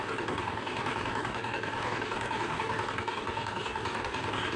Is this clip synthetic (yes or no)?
yes